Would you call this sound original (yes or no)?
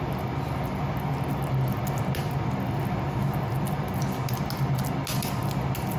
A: yes